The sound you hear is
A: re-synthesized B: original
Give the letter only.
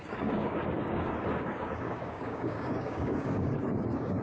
A